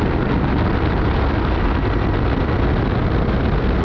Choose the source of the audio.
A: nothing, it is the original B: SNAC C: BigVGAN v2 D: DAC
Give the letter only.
A